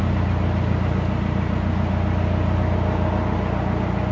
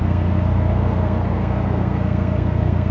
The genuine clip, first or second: first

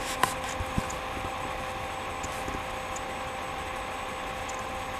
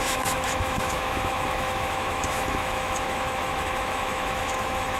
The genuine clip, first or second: first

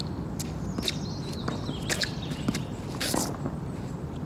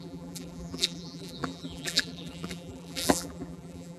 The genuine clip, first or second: first